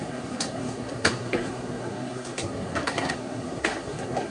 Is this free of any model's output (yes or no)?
no